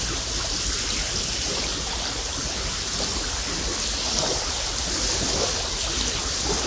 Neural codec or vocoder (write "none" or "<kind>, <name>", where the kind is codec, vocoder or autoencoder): none